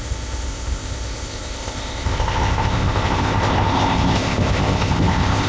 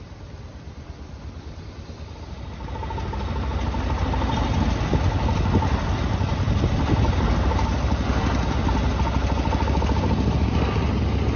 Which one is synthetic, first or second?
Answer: first